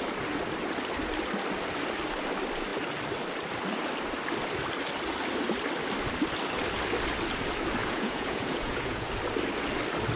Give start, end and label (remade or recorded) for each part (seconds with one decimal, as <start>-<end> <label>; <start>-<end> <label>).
0.0-7.8 recorded; 7.8-9.1 remade; 9.1-10.2 recorded